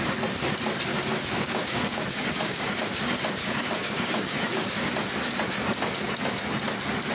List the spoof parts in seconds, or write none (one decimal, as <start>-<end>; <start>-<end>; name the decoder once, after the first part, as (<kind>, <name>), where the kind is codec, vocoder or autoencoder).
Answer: 0.9-2.8 (codec, DAC); 3.4-4.9